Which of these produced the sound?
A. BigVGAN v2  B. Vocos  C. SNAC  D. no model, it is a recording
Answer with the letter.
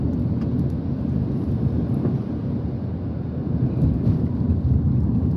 D